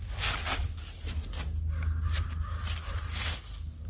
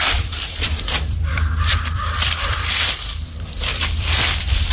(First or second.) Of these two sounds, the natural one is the first